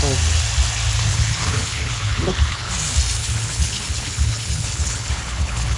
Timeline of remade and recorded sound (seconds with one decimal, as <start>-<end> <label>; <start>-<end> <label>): 0.0-1.1 recorded; 1.1-2.7 remade; 2.7-3.2 recorded; 3.2-5.8 remade